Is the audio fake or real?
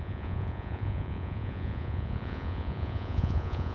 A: fake